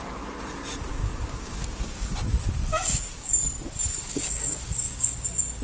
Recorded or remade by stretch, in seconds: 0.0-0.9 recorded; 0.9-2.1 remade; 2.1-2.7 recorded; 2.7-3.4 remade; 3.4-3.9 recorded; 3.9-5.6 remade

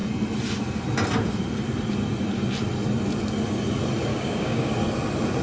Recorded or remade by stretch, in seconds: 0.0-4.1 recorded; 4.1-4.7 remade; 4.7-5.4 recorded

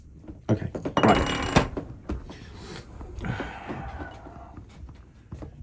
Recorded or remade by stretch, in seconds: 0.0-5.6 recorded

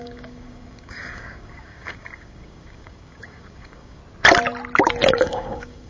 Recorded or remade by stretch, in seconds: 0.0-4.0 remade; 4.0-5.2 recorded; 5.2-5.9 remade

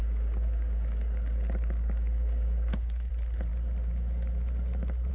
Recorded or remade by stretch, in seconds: 0.0-3.1 remade; 3.1-5.1 recorded